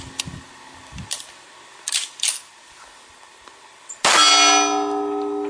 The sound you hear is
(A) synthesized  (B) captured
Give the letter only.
B